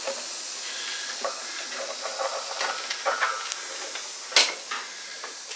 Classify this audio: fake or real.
real